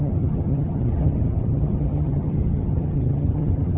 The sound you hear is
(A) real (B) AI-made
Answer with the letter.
B